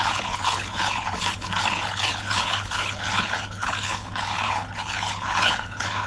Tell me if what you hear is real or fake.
fake